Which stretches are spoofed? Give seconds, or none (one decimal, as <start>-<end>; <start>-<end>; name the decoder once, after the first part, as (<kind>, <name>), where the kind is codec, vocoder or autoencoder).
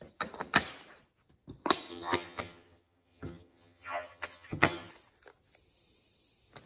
1.9-4.9 (vocoder, HiFi-GAN)